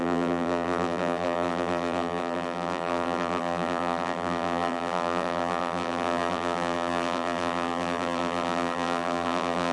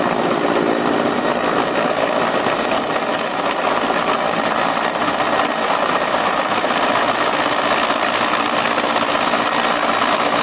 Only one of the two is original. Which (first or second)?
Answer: second